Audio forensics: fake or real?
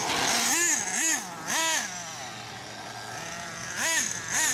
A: real